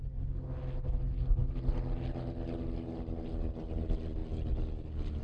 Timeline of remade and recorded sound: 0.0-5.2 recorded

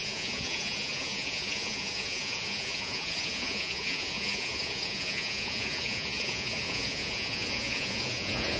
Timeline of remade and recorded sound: 0.0-8.6 remade